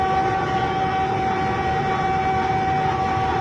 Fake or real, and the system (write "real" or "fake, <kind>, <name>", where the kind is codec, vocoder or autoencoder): real